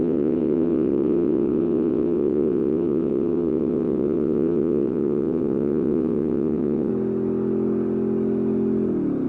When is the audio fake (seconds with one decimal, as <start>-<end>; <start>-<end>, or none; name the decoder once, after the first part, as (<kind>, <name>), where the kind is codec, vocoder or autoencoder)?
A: 0.0-6.9 (vocoder, WaveNeXt)